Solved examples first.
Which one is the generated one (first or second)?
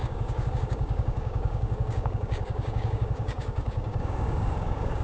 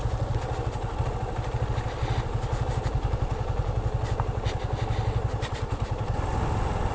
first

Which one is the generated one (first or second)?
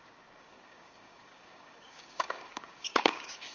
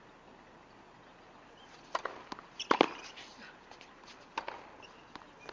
first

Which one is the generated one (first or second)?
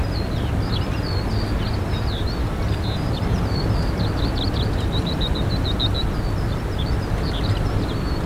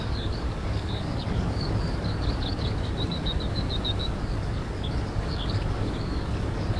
second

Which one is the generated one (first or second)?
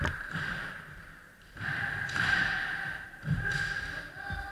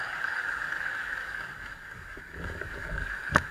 second